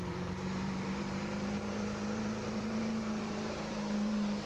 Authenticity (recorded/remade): remade